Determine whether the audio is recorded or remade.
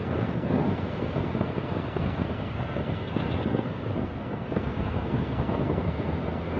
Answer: remade